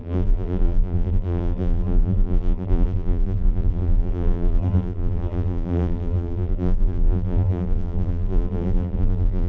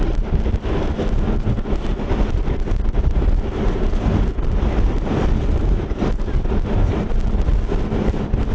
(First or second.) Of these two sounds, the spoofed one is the first